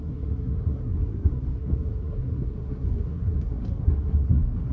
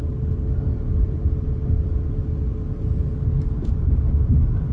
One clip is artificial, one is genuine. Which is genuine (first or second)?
second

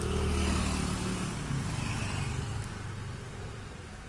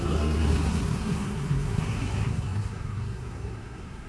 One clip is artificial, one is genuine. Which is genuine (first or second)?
first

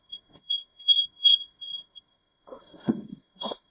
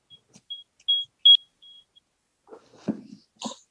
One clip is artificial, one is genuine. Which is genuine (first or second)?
second